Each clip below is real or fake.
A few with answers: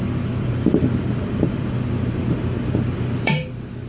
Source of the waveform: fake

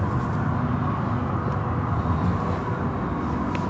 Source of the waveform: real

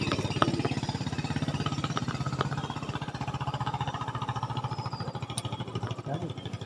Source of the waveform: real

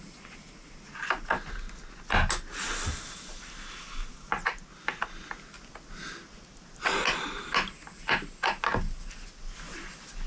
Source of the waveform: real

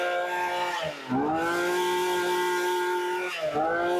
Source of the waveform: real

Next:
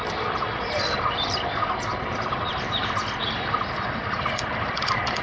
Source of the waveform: fake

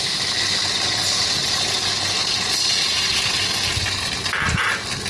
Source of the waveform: real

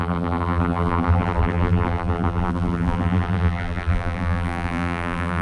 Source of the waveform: fake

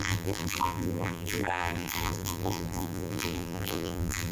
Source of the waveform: fake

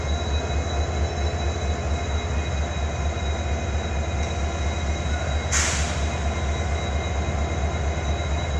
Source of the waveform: real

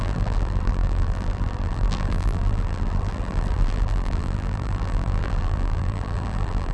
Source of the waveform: fake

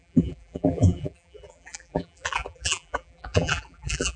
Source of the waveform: fake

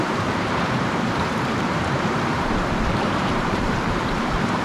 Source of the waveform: fake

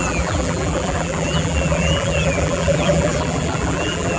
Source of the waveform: fake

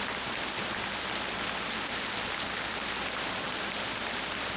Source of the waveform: fake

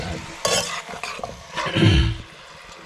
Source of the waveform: real